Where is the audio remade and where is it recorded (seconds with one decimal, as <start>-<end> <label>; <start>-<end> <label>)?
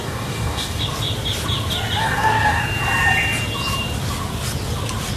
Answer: 0.0-0.8 remade; 0.8-2.0 recorded; 2.0-2.6 remade; 2.6-5.2 recorded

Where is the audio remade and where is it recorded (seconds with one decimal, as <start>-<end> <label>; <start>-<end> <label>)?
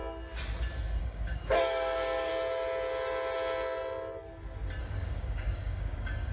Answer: 0.0-1.0 recorded; 1.0-2.3 remade; 2.3-4.8 recorded; 4.8-6.3 remade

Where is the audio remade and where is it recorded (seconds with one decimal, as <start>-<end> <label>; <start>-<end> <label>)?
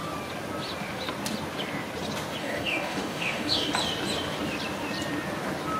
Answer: 0.0-2.4 recorded; 2.4-3.7 remade; 3.7-5.8 recorded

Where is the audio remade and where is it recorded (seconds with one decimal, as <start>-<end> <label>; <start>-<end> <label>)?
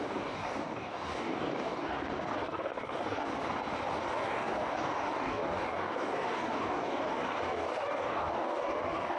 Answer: 0.0-3.3 remade; 3.3-4.1 recorded; 4.1-9.2 remade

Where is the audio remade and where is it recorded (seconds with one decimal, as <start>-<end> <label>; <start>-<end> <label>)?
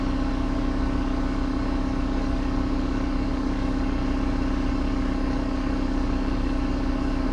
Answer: 0.0-4.0 remade; 4.0-4.7 recorded; 4.7-7.3 remade